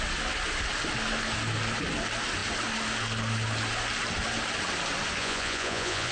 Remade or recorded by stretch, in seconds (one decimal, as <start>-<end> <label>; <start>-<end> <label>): 0.0-5.2 recorded; 5.2-6.1 remade